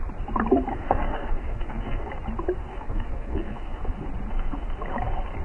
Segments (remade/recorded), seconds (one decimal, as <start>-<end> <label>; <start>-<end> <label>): 0.0-0.7 recorded; 0.7-2.1 remade; 2.1-2.7 recorded; 2.7-3.8 remade; 3.8-5.4 recorded